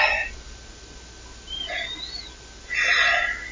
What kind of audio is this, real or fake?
real